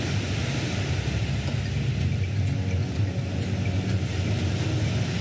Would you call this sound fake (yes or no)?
no